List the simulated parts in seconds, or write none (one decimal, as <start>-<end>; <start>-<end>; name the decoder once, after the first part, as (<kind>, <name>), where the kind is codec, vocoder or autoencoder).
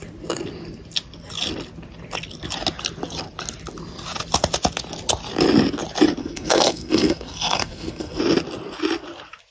6.2-8.2 (codec, SNAC)